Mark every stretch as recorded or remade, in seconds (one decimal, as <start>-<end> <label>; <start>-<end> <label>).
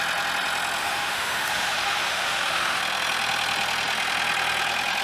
0.0-0.8 recorded; 0.8-2.8 remade; 2.8-5.0 recorded